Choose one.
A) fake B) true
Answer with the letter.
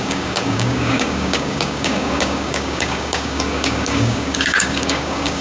A